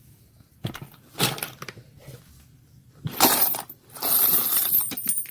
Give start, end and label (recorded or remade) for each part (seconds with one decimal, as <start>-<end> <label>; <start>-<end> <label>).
0.0-0.7 remade; 0.7-5.3 recorded